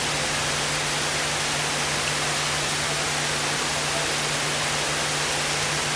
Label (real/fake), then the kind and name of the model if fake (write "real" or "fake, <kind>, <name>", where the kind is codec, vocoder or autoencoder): real